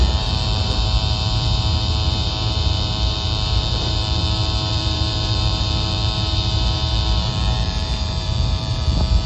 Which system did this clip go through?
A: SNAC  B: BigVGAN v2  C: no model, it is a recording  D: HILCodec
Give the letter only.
B